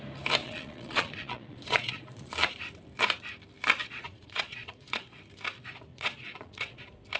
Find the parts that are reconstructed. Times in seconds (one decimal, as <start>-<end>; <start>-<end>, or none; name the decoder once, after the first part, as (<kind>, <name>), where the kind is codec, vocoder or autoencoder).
0.4-2.3 (vocoder, Vocos); 3.8-5.2; 5.9-6.8